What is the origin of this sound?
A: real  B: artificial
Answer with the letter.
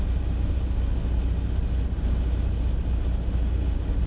A